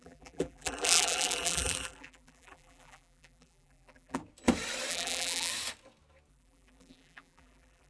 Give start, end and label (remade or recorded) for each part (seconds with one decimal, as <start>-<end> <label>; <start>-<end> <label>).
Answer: 0.0-4.2 remade; 4.2-4.9 recorded; 4.9-5.5 remade; 5.5-6.3 recorded; 6.3-7.9 remade